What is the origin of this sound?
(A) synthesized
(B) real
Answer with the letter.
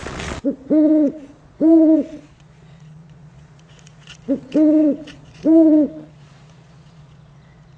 A